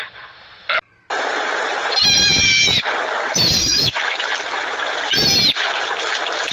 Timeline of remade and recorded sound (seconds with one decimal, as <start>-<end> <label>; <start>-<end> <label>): 0.0-3.6 recorded; 3.6-4.2 remade; 4.2-6.5 recorded